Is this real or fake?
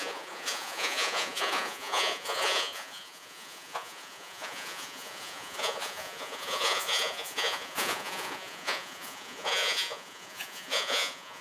fake